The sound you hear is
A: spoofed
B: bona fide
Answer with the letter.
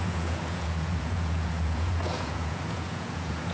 A